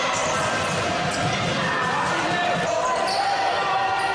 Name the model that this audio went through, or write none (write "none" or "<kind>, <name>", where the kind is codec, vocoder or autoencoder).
none